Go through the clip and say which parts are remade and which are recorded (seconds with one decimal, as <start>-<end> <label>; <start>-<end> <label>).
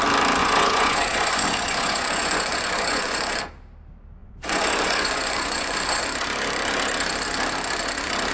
0.0-0.4 recorded; 0.4-3.4 remade; 3.4-4.2 recorded; 4.2-6.0 remade; 6.0-8.3 recorded